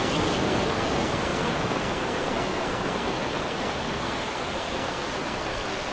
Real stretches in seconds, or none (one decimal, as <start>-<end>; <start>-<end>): none